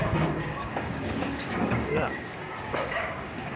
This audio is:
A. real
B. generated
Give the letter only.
B